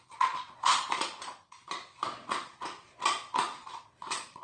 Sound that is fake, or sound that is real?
fake